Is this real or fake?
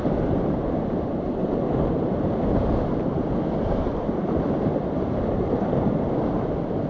real